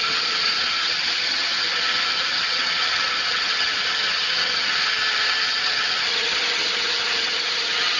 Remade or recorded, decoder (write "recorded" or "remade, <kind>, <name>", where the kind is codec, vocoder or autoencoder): remade, vocoder, HiFi-GAN